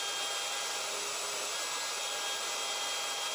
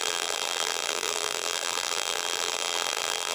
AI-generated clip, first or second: second